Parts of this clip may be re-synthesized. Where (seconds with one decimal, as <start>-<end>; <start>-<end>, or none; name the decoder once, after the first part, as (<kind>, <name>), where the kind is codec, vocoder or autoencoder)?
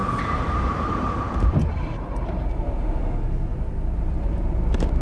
0.0-3.0 (vocoder, BigVGAN v2); 3.5-4.4